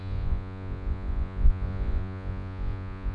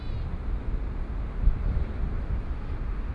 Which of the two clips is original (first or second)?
second